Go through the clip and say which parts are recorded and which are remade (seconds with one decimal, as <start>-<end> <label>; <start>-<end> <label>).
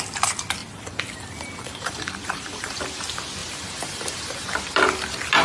0.0-0.6 recorded; 0.6-2.8 remade; 2.8-3.4 recorded; 3.4-4.4 remade; 4.4-5.4 recorded